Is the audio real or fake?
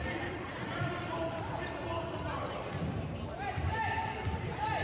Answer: fake